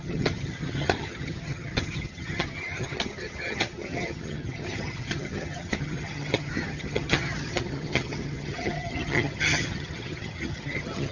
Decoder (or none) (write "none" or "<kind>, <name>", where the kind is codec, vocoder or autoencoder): vocoder, HiFi-GAN